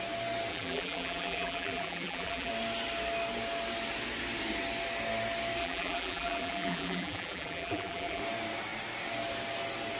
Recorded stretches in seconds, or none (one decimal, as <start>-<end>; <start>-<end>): 0.0-0.5; 2.5-5.6; 8.2-10.0